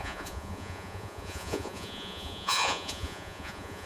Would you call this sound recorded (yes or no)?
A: no